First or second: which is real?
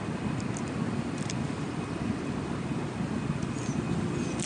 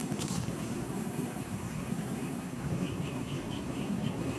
first